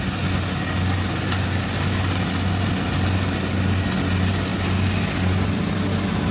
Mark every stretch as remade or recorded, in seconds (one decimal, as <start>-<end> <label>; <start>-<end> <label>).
0.0-6.3 recorded